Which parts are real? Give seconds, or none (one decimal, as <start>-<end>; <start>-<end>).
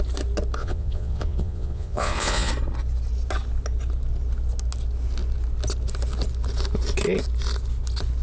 0.0-0.6; 2.5-8.2